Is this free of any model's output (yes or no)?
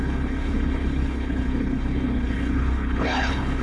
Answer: no